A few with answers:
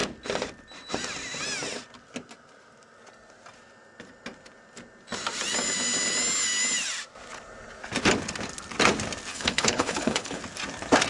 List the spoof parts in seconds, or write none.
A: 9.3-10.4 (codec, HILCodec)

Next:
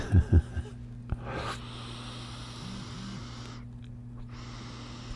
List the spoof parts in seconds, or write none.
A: none

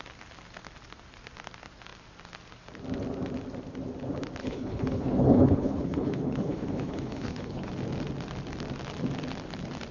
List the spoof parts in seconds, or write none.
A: 4.4-7.7 (codec, HILCodec)

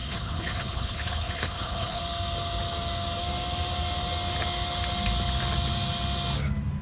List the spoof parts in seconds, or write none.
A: 0.0-2.0 (codec, HILCodec)